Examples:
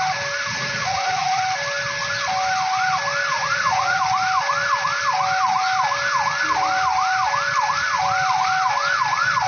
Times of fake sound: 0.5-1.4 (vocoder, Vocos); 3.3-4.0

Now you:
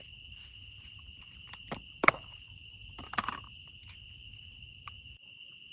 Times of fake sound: 2.0-3.6 (vocoder, BigVGAN v2)